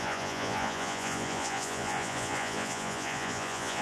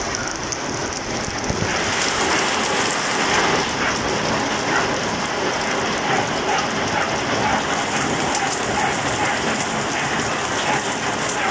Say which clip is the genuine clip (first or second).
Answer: second